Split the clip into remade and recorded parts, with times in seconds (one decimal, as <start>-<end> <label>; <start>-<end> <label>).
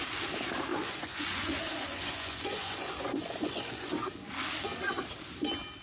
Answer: 0.0-0.7 recorded; 0.7-3.9 remade; 3.9-5.8 recorded